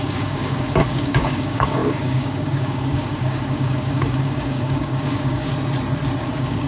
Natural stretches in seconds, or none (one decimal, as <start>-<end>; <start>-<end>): 5.5-6.2